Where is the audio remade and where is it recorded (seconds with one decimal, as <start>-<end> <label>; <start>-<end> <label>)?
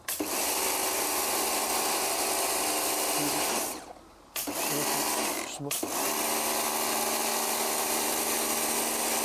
0.0-9.2 recorded